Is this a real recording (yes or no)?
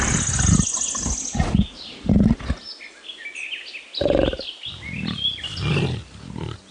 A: yes